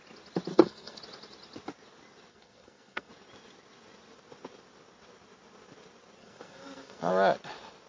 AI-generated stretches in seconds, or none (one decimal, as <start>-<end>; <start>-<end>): 0.5-1.0; 2.3-3.1; 6.2-7.1